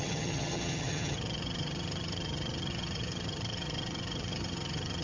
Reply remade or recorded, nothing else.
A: remade